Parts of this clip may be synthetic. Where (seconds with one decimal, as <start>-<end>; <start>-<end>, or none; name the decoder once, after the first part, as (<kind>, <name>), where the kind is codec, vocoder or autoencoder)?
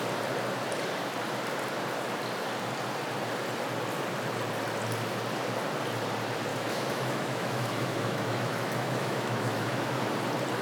6.5-10.0 (autoencoder, DAC-VAE)